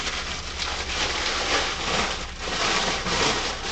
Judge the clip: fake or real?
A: real